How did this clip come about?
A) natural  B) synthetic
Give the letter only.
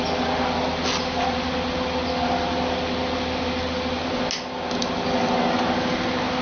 A